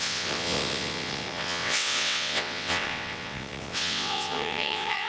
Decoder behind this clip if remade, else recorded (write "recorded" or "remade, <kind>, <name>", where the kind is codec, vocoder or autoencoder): remade, vocoder, WaveNeXt